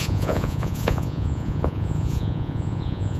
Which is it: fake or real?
fake